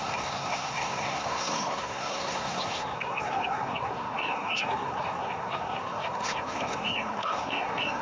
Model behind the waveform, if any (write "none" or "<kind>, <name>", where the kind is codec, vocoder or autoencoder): codec, SNAC